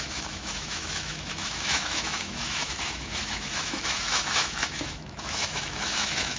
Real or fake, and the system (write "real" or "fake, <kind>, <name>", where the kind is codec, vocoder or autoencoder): fake, autoencoder, DAC-VAE